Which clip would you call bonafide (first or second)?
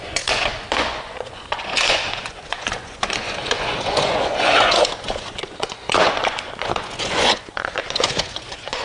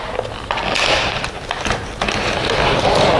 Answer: second